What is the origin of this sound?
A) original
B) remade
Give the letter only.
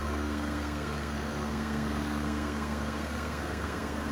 B